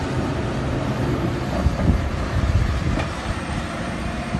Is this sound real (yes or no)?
no